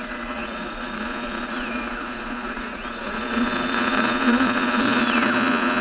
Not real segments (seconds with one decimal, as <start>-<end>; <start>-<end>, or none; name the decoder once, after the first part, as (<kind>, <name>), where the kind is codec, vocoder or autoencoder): 0.0-5.8 (vocoder, Vocos)